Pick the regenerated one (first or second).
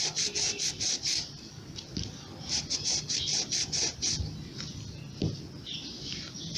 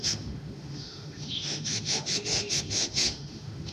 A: second